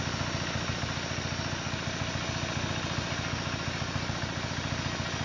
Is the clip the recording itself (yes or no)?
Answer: yes